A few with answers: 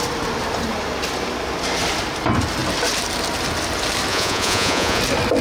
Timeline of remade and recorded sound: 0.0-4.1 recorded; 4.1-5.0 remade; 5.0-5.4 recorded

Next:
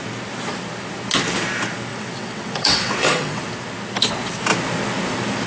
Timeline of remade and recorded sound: 0.0-1.9 recorded; 1.9-3.4 remade; 3.4-5.5 recorded